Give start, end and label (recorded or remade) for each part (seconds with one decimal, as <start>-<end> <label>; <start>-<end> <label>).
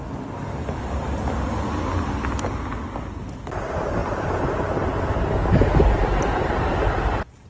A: 0.0-7.5 recorded